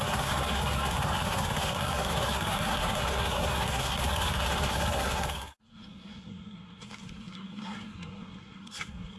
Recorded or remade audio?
remade